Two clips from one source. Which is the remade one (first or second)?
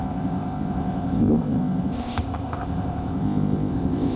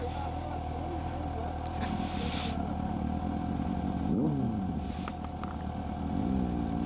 first